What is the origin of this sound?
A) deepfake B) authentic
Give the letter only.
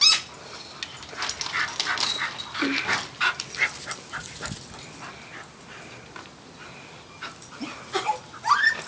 B